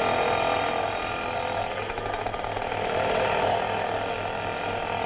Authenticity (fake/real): real